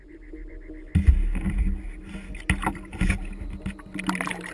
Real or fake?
real